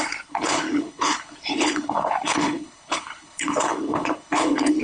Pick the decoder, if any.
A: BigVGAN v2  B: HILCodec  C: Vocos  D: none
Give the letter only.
B